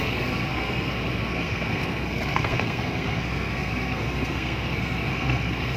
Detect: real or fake fake